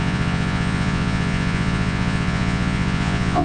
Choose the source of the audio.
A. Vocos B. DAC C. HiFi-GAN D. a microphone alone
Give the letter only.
A